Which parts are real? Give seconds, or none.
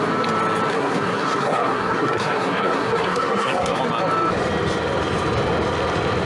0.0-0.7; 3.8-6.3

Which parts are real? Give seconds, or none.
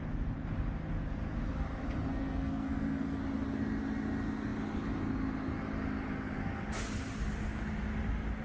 0.0-2.1; 3.2-8.4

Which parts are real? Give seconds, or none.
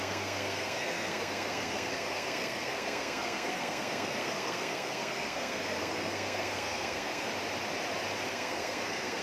7.3-8.3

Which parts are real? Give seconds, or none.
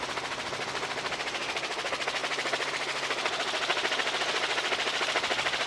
0.0-5.7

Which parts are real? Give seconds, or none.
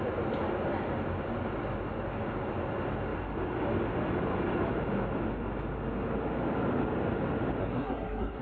0.0-7.6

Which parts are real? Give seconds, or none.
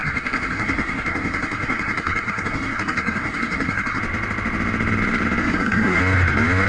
4.0-5.4; 6.0-6.7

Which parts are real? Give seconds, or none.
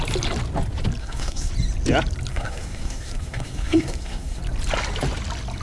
0.0-1.0; 1.5-2.3; 4.4-5.6